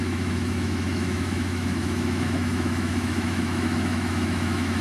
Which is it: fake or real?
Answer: fake